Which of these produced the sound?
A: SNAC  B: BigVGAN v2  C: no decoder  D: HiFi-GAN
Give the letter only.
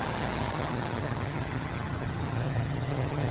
D